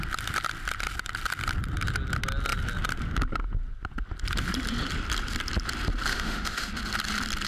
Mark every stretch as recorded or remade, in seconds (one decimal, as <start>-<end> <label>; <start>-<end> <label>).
0.0-6.1 recorded; 6.1-6.7 remade; 6.7-7.5 recorded